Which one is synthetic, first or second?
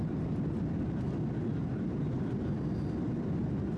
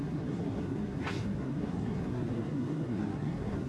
second